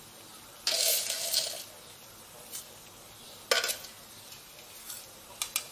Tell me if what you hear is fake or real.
real